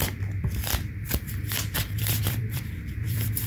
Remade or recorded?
remade